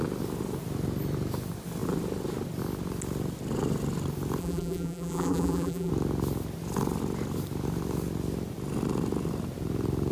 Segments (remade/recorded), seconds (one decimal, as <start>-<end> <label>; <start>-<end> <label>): 0.0-4.4 recorded; 4.4-5.9 remade; 5.9-10.1 recorded